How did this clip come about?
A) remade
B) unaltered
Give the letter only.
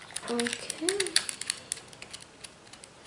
B